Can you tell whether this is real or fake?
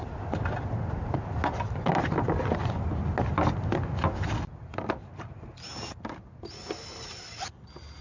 real